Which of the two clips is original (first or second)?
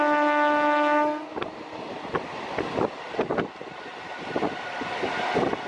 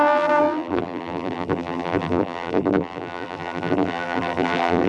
first